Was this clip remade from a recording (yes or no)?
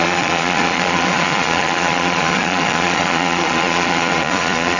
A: yes